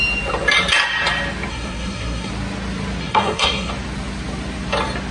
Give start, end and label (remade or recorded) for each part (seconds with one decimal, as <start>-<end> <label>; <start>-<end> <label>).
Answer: 0.0-1.5 recorded; 1.5-2.3 remade; 2.3-3.0 recorded; 3.0-3.7 remade; 3.7-5.1 recorded